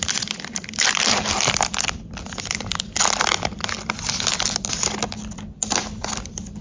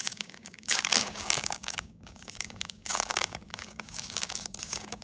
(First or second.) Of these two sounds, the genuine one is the first